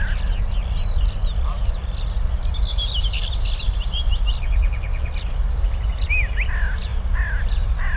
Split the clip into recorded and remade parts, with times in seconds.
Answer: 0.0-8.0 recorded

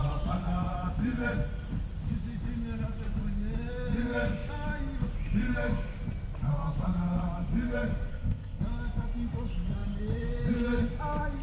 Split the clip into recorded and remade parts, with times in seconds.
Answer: 0.0-8.1 recorded; 8.1-8.6 remade; 8.6-11.4 recorded

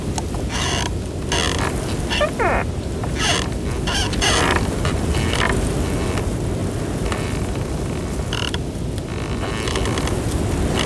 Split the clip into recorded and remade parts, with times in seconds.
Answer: 0.0-4.0 recorded; 4.0-4.9 remade; 4.9-6.6 recorded; 6.6-9.5 remade; 9.5-10.9 recorded

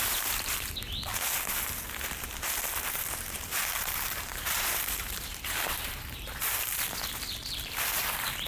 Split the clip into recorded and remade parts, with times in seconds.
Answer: 0.0-1.1 remade; 1.1-2.9 recorded; 2.9-8.5 remade